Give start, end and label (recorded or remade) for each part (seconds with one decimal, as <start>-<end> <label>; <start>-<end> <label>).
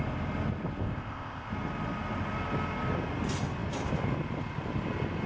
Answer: 0.0-0.8 recorded; 0.8-1.5 remade; 1.5-5.3 recorded